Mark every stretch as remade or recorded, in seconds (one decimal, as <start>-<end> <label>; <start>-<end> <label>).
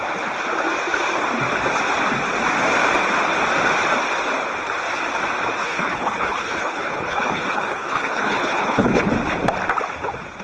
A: 0.0-5.6 recorded; 5.6-9.1 remade; 9.1-10.4 recorded